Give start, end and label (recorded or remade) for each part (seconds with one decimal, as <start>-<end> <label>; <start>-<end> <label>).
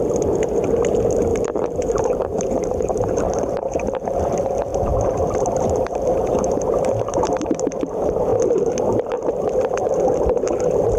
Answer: 0.0-1.3 recorded; 1.3-4.2 remade; 4.2-4.7 recorded; 4.7-7.5 remade; 7.5-11.0 recorded